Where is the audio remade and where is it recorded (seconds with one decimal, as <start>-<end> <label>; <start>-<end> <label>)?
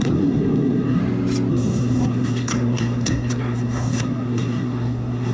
0.0-1.0 remade; 1.0-1.5 recorded; 1.5-5.3 remade